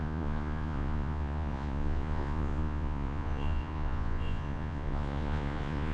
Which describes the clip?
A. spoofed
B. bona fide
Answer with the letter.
A